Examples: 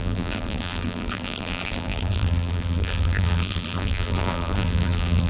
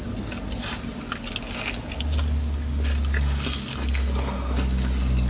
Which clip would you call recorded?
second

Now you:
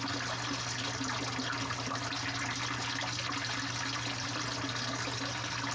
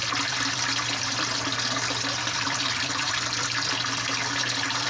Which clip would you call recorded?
first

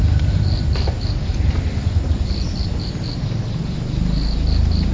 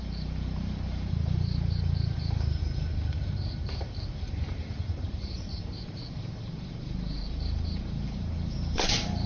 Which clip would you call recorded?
first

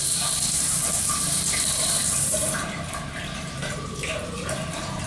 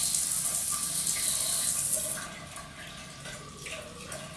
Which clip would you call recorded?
second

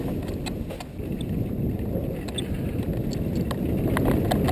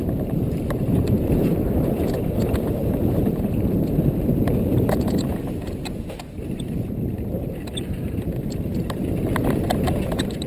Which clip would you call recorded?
first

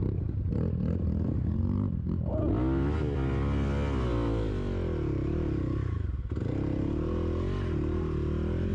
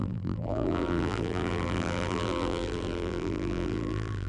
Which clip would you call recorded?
first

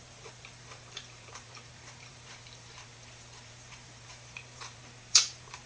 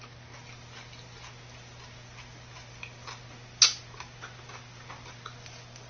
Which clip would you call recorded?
second